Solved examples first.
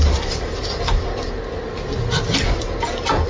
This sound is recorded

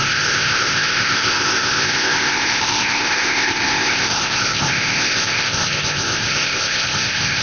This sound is remade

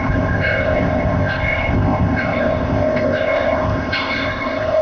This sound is remade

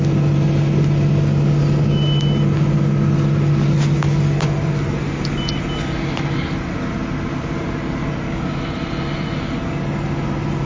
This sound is recorded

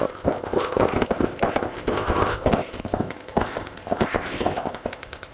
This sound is remade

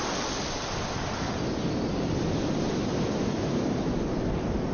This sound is recorded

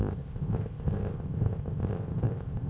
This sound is remade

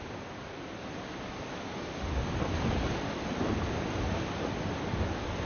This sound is recorded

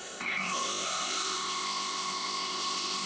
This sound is remade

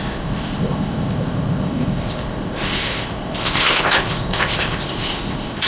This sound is remade